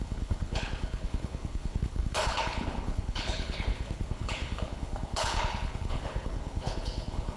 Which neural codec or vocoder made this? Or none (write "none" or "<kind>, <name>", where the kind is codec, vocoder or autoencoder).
codec, HILCodec